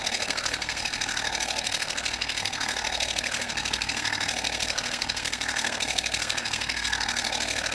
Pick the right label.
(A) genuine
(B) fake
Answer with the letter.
B